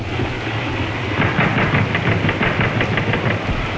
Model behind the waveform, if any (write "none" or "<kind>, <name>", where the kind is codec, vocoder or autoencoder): none